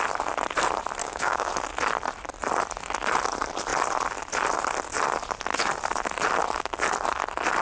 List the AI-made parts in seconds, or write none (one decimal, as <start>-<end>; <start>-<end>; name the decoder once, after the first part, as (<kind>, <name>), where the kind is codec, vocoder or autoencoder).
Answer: 1.0-1.5 (codec, DAC)